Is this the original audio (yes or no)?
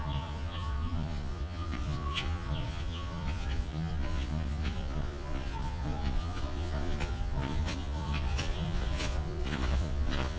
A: no